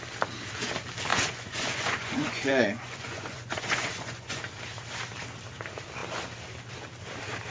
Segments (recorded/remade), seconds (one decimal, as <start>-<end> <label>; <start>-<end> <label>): 0.0-1.1 recorded; 1.1-4.4 remade; 4.4-7.5 recorded